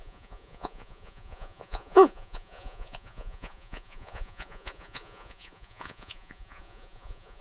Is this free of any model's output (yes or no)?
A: no